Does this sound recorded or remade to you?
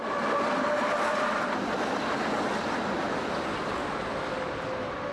recorded